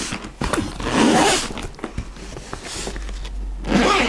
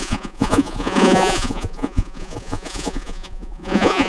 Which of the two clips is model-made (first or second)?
second